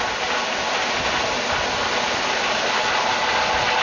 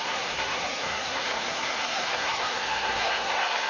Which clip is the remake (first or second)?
second